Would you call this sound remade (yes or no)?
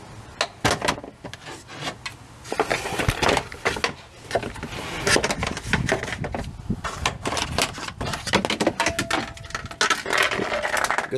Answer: no